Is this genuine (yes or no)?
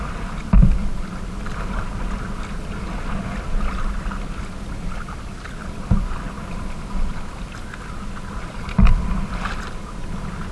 yes